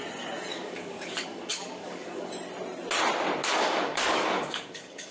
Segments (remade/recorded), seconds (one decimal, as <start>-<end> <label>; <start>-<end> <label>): 0.0-0.5 recorded; 0.5-2.3 remade; 2.3-3.4 recorded; 3.4-5.1 remade